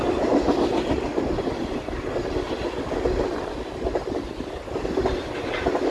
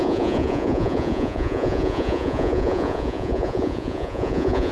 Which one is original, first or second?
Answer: first